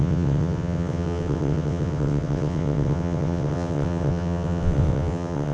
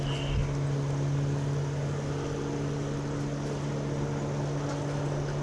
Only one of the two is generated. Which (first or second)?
first